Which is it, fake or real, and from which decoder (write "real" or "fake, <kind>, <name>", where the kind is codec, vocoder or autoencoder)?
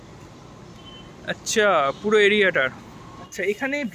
real